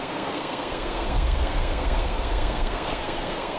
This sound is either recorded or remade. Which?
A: remade